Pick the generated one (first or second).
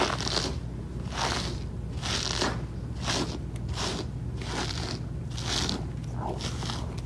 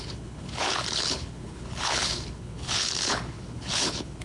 second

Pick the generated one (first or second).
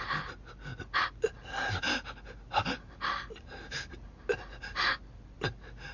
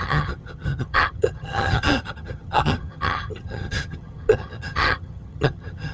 second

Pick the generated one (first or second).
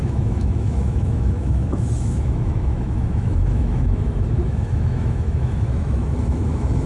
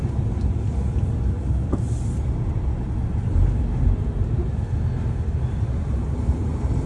first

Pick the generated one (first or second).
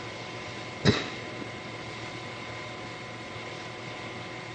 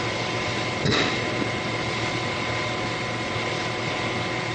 second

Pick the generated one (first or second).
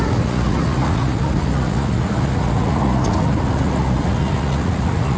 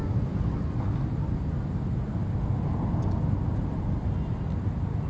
first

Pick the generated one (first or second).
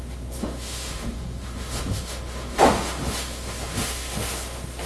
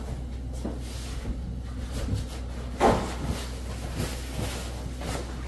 first